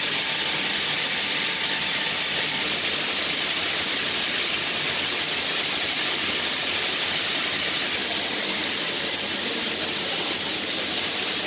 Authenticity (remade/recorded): recorded